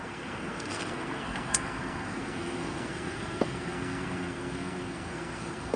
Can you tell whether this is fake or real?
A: fake